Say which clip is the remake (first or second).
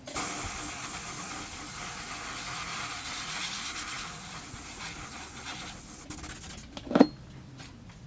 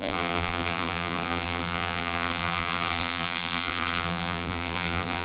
second